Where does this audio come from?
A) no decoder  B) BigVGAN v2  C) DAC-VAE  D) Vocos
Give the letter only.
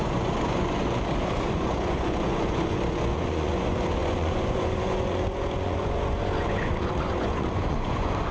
D